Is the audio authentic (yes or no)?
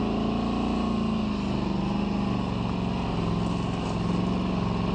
yes